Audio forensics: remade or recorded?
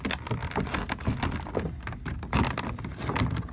recorded